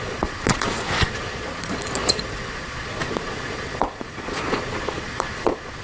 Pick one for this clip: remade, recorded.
remade